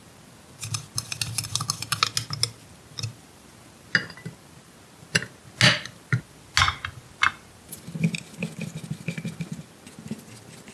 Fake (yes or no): no